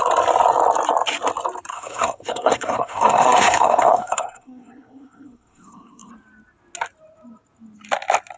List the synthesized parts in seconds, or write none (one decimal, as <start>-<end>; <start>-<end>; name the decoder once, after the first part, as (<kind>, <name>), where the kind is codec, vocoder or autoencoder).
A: 1.7-6.1 (codec, SNAC)